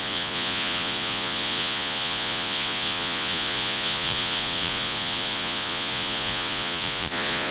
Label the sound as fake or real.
fake